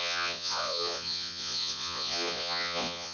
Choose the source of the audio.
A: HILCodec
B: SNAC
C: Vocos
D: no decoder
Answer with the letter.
C